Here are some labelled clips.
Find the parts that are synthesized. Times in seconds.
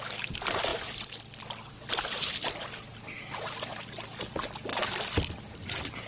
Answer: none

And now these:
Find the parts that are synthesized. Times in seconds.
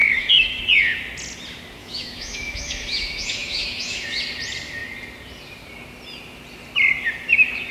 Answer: 0.0-0.6 (autoencoder, DAC-VAE); 1.8-4.2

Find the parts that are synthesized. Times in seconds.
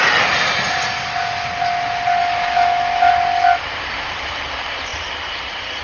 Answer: 2.2-3.1 (autoencoder, DAC-VAE)